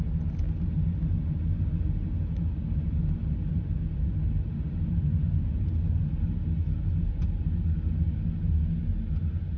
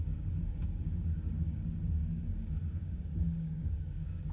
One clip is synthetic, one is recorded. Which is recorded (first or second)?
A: first